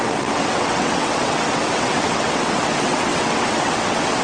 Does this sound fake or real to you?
fake